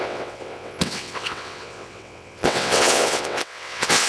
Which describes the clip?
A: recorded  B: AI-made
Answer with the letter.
B